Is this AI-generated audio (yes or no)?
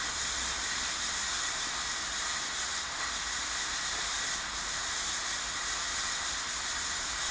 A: no